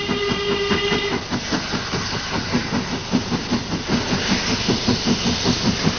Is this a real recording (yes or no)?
yes